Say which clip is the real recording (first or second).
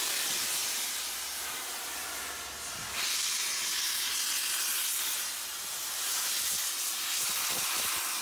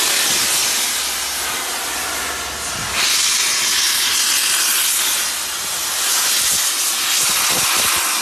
second